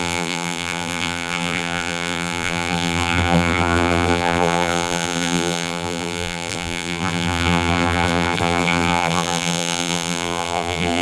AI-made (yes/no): yes